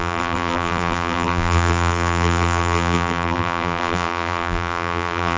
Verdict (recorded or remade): remade